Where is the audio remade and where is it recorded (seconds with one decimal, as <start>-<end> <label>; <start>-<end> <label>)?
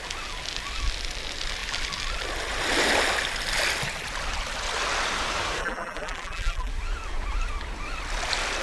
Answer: 0.0-5.6 recorded; 5.6-6.7 remade; 6.7-8.6 recorded